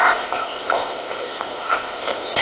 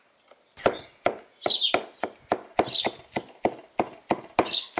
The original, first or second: second